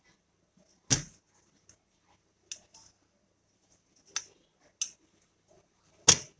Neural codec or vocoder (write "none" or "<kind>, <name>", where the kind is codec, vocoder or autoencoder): none